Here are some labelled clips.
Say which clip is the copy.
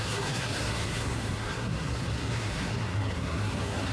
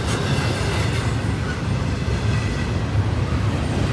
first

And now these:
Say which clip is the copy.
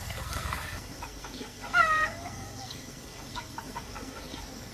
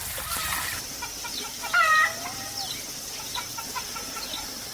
first